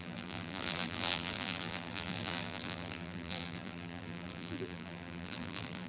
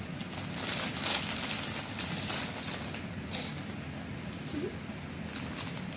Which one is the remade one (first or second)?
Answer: first